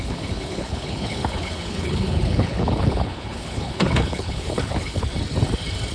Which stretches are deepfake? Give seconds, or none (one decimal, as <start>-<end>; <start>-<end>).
0.0-5.1